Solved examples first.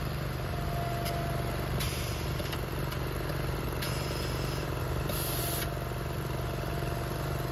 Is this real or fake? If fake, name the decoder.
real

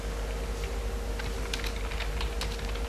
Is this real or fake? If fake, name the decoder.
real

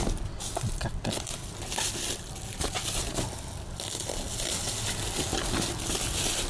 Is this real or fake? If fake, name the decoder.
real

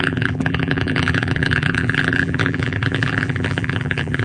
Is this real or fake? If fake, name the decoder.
fake, vocoder, BigVGAN v2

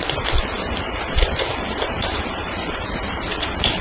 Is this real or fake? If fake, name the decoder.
fake, vocoder, BigVGAN v2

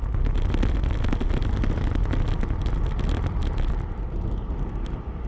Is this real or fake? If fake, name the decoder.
real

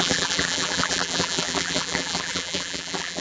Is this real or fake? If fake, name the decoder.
fake, vocoder, BigVGAN v2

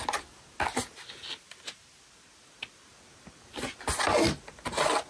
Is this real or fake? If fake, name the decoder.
real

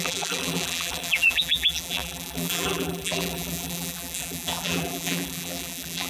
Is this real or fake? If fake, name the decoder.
fake, vocoder, BigVGAN v2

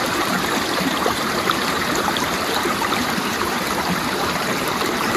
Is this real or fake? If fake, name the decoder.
fake, vocoder, BigVGAN v2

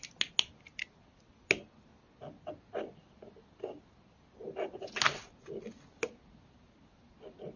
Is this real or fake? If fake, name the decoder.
real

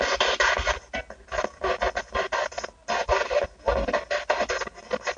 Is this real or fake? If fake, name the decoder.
real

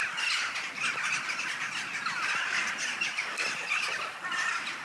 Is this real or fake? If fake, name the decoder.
real